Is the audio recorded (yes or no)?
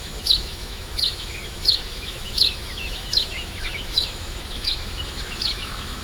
no